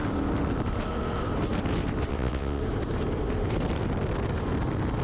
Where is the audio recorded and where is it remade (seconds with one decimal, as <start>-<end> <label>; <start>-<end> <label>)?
0.0-2.1 recorded; 2.1-2.6 remade; 2.6-5.0 recorded